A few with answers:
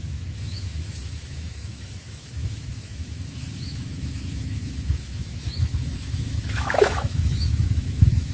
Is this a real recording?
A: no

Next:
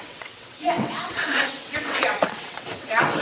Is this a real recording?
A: no